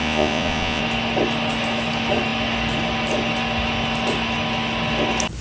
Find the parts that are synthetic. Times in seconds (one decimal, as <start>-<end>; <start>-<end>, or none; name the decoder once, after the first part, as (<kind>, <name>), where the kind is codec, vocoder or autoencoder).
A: 0.0-0.8 (vocoder, Vocos)